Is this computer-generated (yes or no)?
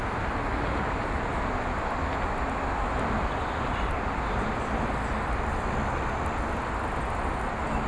no